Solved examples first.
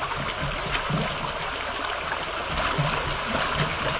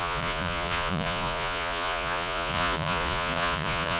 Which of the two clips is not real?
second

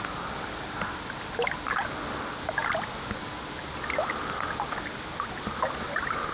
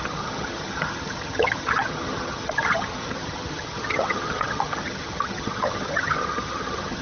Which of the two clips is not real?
second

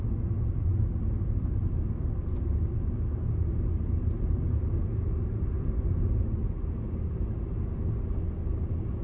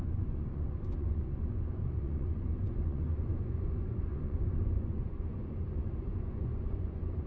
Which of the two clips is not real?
second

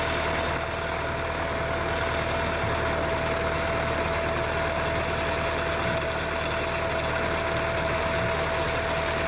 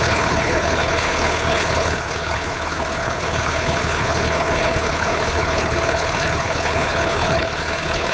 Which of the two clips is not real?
second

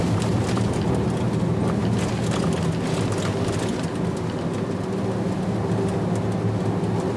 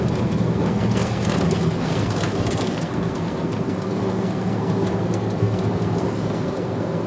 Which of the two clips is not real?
second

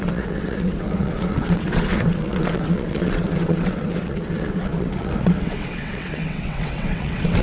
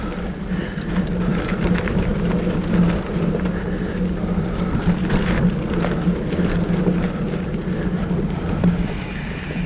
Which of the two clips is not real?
first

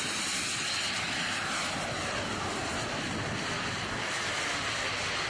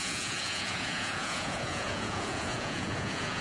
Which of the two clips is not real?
second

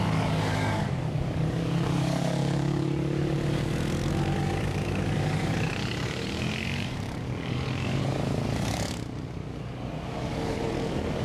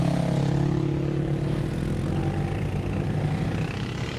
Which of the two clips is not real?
first